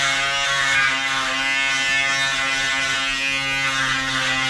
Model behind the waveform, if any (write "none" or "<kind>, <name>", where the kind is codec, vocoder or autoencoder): none